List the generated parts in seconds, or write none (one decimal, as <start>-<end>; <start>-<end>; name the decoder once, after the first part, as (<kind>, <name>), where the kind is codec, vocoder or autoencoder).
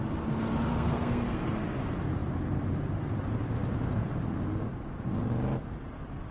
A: 0.7-1.4 (codec, SNAC)